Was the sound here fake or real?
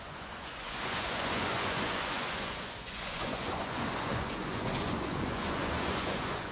fake